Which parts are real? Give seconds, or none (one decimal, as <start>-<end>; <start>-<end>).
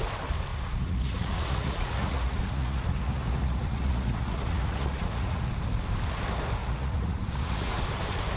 0.0-0.5; 5.5-6.6; 7.8-8.4